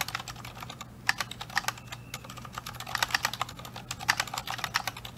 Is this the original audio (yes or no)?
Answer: yes